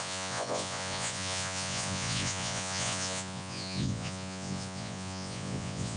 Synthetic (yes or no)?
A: yes